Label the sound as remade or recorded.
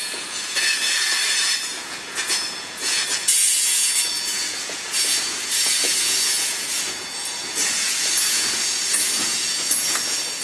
remade